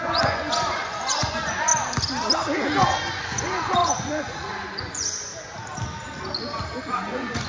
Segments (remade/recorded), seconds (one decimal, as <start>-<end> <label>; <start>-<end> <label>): 0.0-1.7 remade; 1.7-2.8 recorded; 2.8-5.3 remade; 5.3-6.8 recorded; 6.8-7.5 remade